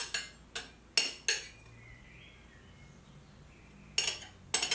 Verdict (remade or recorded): recorded